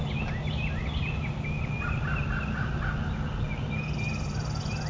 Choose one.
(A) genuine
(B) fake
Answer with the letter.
A